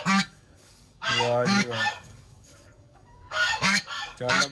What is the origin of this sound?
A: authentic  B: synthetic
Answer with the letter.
B